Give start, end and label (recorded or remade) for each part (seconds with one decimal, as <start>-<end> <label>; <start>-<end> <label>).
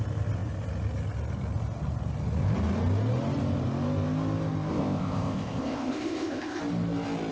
0.0-4.7 recorded; 4.7-6.6 remade; 6.6-7.3 recorded